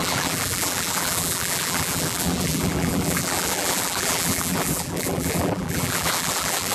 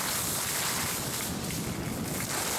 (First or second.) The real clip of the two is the second